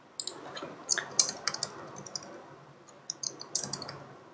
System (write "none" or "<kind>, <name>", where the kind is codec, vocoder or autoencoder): none